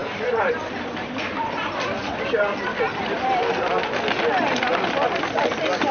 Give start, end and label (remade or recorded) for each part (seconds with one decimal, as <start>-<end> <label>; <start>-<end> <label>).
0.0-3.5 remade; 3.5-5.9 recorded